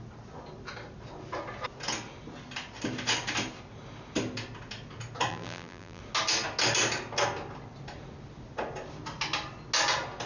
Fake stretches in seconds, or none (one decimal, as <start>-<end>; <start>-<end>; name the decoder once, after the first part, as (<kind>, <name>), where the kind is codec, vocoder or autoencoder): 5.3-6.0 (vocoder, BigVGAN v2)